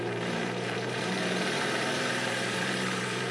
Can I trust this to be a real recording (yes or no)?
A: no